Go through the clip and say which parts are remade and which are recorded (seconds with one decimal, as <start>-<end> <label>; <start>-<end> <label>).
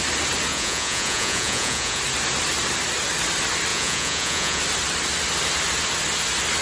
0.0-0.5 recorded; 0.5-2.0 remade; 2.0-3.7 recorded; 3.7-4.6 remade; 4.6-6.6 recorded